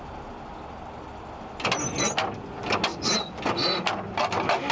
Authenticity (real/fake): real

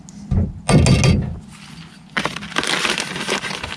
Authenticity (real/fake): real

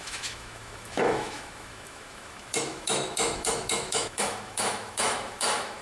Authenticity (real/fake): fake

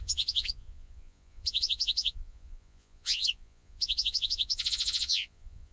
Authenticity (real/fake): fake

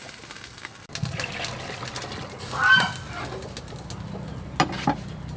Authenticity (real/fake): real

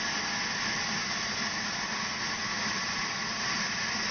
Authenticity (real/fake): real